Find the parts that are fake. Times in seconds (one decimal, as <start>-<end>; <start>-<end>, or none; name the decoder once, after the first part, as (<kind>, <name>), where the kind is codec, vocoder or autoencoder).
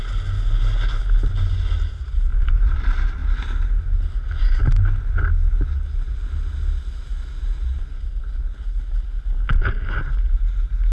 2.3-2.8 (vocoder, BigVGAN v2); 7.7-8.2